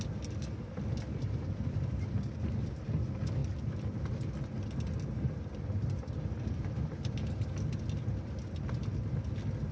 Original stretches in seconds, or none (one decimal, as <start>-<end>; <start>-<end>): 0.0-9.7